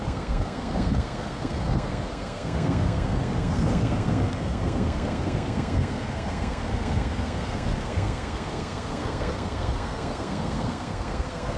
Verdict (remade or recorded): remade